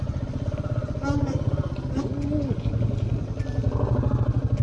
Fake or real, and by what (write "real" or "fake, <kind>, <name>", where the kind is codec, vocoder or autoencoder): real